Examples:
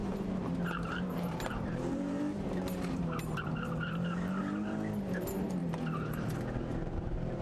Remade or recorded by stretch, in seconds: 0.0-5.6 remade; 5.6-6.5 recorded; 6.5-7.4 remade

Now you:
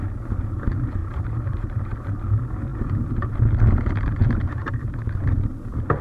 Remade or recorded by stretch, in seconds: 0.0-1.0 recorded; 1.0-2.1 remade; 2.1-2.7 recorded; 2.7-3.4 remade; 3.4-4.2 recorded; 4.2-4.7 remade; 4.7-6.0 recorded